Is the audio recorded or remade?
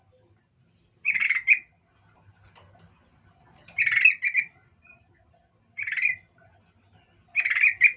recorded